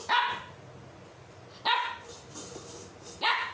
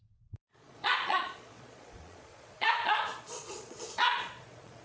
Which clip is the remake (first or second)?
second